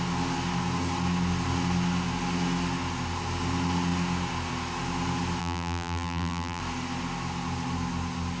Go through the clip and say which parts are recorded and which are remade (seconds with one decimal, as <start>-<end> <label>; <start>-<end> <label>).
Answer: 0.0-5.4 recorded; 5.4-6.6 remade; 6.6-8.4 recorded